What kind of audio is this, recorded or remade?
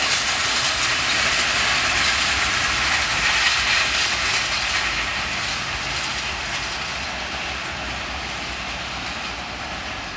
recorded